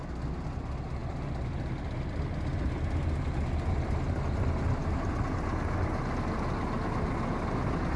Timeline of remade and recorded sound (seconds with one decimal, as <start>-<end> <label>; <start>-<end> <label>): 0.0-8.0 recorded

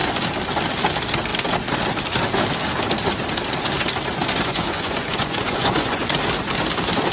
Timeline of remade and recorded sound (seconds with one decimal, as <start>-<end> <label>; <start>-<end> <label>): 0.0-4.2 recorded; 4.2-6.1 remade; 6.1-7.1 recorded

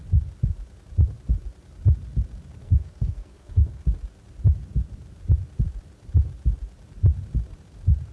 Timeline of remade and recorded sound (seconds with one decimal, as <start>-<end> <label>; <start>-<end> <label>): 0.0-2.6 recorded; 2.6-3.8 remade; 3.8-8.1 recorded

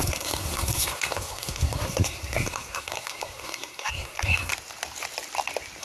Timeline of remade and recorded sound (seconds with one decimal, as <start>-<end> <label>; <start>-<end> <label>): 0.0-4.5 remade; 4.5-5.8 recorded